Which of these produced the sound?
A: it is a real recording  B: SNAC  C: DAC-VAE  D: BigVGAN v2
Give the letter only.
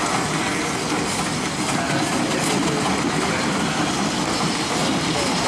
A